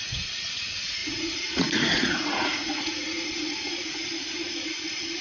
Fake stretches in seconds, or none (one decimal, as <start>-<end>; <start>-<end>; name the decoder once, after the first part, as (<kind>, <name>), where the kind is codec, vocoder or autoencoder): 0.0-5.2 (vocoder, Vocos)